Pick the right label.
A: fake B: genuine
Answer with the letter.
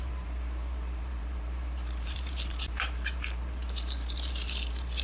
A